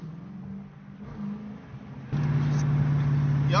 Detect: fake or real real